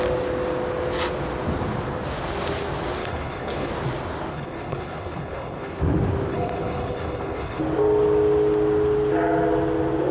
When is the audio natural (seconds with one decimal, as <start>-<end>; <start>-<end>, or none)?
0.0-3.0; 3.7-4.3; 5.8-6.3; 7.6-10.1